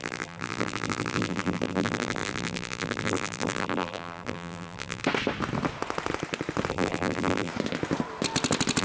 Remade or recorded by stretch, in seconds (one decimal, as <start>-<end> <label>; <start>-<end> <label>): 0.0-5.0 remade; 5.0-6.7 recorded; 6.7-7.5 remade; 7.5-8.8 recorded